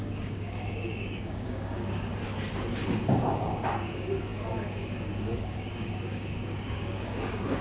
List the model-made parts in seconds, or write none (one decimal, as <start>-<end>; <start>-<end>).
0.0-2.1; 3.1-7.6